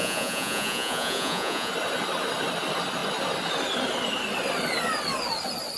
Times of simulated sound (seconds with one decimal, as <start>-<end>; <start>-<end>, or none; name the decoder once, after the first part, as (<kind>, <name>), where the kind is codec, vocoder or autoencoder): 0.0-1.7 (vocoder, Vocos)